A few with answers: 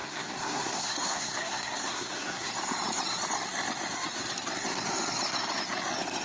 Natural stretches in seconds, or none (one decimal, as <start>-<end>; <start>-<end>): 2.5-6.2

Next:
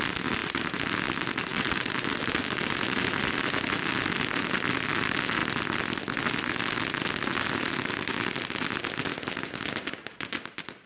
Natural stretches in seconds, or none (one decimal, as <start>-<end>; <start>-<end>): 0.0-10.9

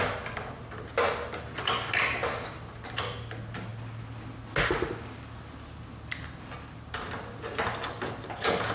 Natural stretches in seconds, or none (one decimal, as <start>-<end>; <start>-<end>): 0.0-8.7